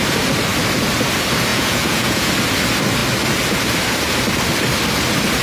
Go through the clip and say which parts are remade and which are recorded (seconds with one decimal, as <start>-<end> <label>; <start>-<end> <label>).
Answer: 0.0-1.5 recorded; 1.5-2.3 remade; 2.3-5.4 recorded